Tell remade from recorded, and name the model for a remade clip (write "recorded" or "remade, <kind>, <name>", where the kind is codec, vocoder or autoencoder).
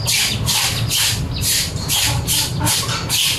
recorded